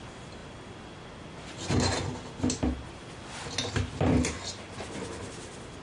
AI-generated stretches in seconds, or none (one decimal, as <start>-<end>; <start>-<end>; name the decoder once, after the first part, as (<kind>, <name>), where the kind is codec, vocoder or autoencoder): none